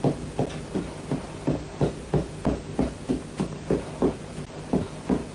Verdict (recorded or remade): recorded